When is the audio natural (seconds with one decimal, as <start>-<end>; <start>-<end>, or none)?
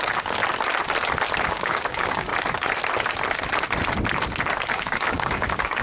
0.4-1.4; 2.3-4.7